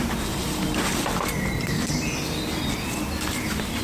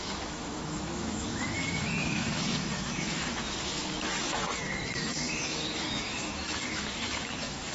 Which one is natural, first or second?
first